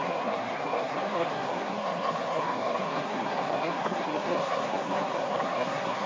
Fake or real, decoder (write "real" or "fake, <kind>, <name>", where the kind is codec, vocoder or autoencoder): fake, codec, SNAC